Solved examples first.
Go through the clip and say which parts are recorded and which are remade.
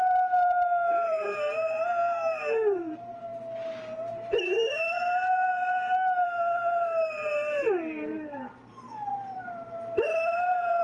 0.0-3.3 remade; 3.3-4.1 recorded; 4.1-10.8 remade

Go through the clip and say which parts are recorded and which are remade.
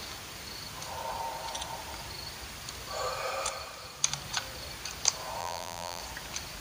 0.0-5.4 recorded; 5.4-6.0 remade; 6.0-6.6 recorded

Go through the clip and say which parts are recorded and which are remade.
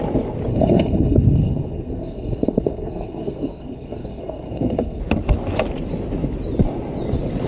0.0-0.5 recorded; 0.5-5.0 remade; 5.0-7.5 recorded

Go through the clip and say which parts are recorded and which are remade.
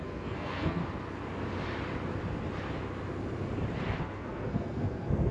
0.0-0.8 remade; 0.8-4.0 recorded; 4.0-5.3 remade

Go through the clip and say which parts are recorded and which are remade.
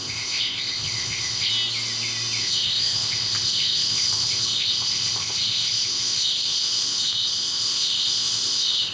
0.0-1.5 remade; 1.5-2.4 recorded; 2.4-8.9 remade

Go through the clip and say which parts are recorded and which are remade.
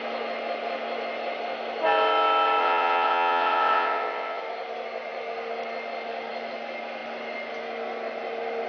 0.0-2.6 recorded; 2.6-4.4 remade; 4.4-8.7 recorded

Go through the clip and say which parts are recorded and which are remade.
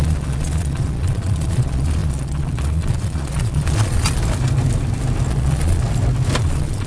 0.0-4.2 remade; 4.2-5.3 recorded; 5.3-5.8 remade; 5.8-6.4 recorded; 6.4-6.9 remade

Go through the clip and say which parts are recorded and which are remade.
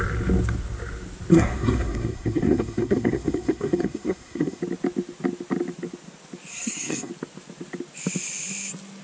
0.0-1.3 recorded; 1.3-4.6 remade; 4.6-6.5 recorded; 6.5-7.1 remade; 7.1-9.0 recorded